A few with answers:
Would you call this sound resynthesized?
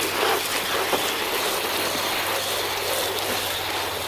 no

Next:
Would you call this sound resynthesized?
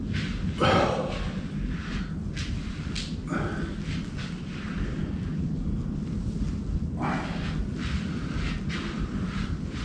no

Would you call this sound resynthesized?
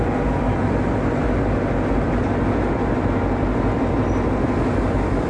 no